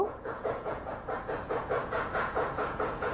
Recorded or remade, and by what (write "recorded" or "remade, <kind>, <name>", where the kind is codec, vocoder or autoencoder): remade, vocoder, Vocos